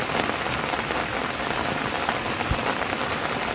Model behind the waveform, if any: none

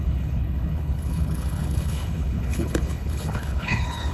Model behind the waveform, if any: codec, HILCodec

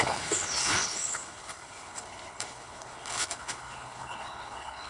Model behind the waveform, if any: codec, HILCodec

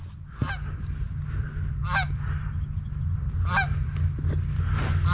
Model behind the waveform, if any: none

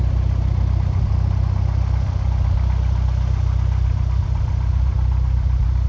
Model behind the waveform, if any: none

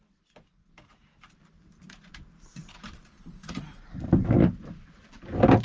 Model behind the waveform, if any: none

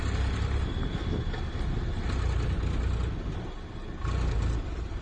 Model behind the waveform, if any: none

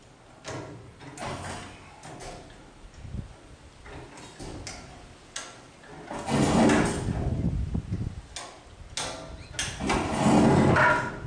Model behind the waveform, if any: none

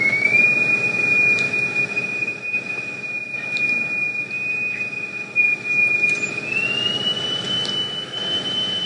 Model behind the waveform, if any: none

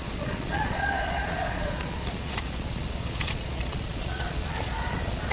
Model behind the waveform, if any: vocoder, Vocos